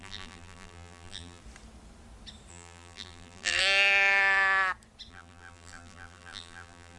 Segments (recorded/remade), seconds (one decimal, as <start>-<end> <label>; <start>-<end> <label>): 0.0-1.4 remade; 1.4-2.5 recorded; 2.5-3.6 remade; 3.6-5.1 recorded; 5.1-7.0 remade